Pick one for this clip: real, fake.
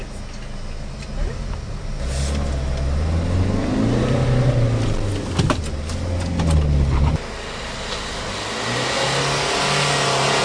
real